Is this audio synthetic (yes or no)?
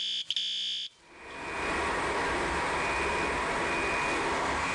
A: no